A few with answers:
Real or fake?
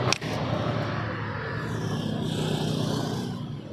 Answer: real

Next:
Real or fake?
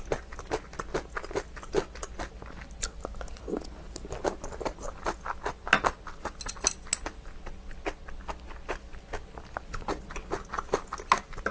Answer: real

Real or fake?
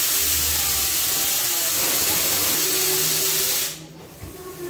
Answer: real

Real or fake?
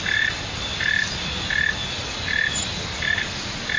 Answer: real